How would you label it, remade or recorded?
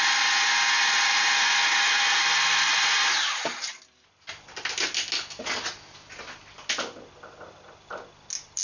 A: recorded